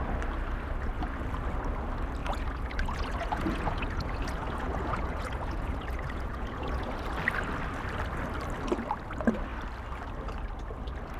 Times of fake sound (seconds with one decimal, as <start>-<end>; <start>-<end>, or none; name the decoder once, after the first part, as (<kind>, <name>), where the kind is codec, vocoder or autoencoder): 2.2-6.9 (vocoder, Vocos)